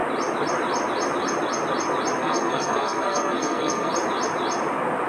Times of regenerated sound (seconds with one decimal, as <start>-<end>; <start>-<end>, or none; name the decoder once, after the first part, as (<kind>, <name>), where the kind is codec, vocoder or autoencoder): 2.2-3.9 (codec, SNAC)